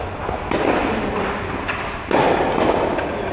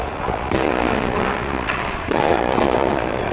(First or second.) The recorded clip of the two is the first